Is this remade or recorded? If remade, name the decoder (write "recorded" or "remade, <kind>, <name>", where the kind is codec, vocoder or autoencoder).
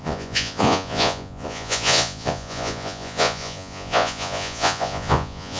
remade, vocoder, Vocos